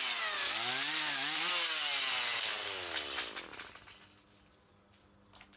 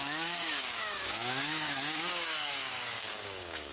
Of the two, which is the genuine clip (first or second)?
first